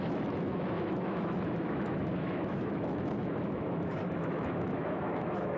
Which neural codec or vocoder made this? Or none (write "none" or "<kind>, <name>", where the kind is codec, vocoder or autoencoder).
autoencoder, DAC-VAE